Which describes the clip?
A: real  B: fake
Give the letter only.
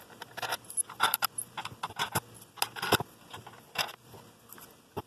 A